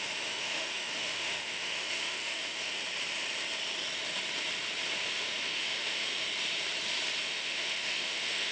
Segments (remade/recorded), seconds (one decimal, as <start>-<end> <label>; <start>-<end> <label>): 0.0-2.8 remade; 2.8-5.1 recorded; 5.1-6.3 remade; 6.3-7.2 recorded; 7.2-8.5 remade